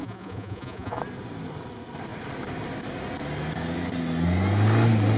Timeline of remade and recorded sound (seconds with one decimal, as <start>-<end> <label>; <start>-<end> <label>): 0.0-1.0 remade; 1.0-5.2 recorded